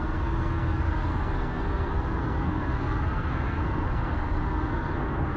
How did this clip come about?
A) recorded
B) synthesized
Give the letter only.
B